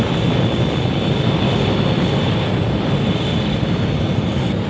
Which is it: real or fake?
real